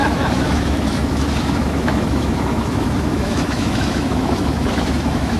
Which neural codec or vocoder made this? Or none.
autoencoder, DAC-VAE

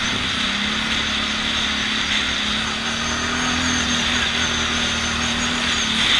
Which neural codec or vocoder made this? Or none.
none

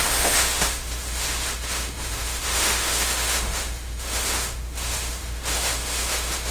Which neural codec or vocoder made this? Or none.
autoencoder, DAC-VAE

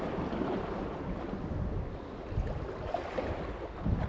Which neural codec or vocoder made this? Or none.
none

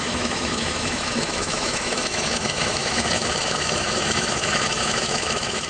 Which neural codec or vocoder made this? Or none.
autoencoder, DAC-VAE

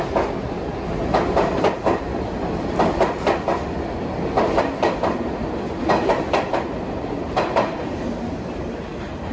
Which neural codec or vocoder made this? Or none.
none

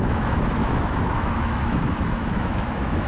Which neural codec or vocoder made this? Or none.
autoencoder, DAC-VAE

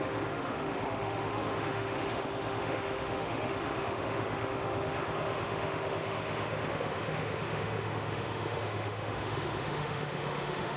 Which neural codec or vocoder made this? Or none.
autoencoder, DAC-VAE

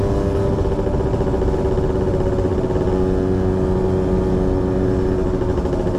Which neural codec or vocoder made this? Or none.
none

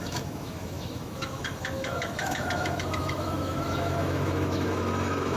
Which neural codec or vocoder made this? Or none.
autoencoder, DAC-VAE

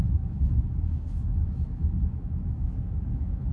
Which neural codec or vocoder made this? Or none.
autoencoder, DAC-VAE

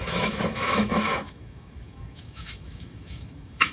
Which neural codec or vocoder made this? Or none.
autoencoder, DAC-VAE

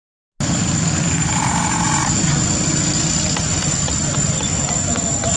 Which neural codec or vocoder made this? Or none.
none